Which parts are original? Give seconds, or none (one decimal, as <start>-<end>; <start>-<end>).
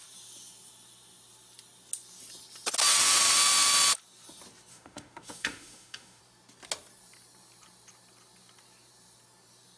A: 0.0-4.7; 6.2-9.8